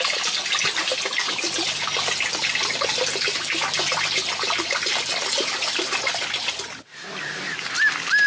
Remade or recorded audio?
recorded